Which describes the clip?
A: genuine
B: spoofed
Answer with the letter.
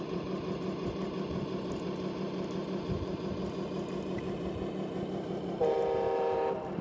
B